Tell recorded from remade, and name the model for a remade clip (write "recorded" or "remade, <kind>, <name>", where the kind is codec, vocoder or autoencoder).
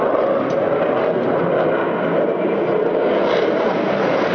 recorded